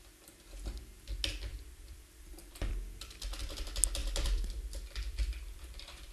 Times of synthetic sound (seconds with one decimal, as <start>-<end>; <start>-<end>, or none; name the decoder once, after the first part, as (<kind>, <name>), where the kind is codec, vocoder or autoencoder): 1.5-2.8 (vocoder, BigVGAN v2); 4.0-6.1